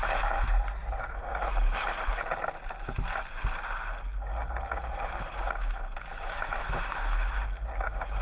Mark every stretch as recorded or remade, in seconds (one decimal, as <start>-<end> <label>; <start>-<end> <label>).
0.0-6.1 recorded; 6.1-7.3 remade; 7.3-8.2 recorded